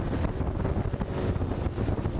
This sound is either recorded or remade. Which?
recorded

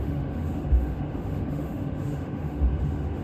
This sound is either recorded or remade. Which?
remade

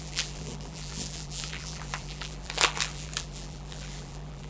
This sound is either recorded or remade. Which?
remade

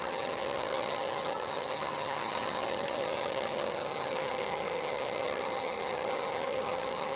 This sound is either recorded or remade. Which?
remade